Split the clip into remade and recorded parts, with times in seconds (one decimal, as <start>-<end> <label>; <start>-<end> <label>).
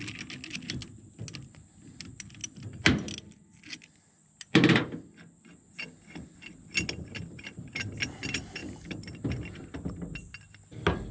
0.0-11.1 recorded